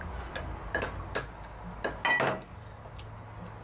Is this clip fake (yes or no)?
no